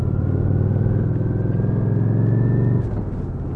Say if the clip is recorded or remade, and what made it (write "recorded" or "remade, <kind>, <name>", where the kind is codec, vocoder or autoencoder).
recorded